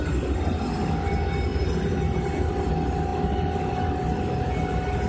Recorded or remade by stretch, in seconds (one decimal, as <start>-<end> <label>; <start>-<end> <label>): 0.0-5.1 recorded